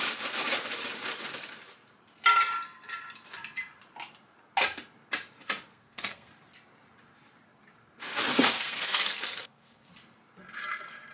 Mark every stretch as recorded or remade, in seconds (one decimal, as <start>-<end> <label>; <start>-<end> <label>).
0.0-5.7 recorded; 5.7-6.3 remade; 6.3-8.3 recorded; 8.3-9.9 remade; 9.9-11.1 recorded